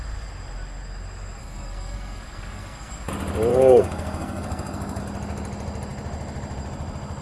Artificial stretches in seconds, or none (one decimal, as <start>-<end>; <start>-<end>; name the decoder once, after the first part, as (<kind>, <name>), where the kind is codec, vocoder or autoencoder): 1.4-3.1 (codec, SNAC); 3.5-5.0